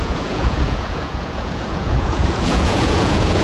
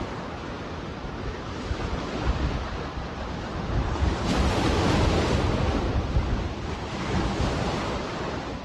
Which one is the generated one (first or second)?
first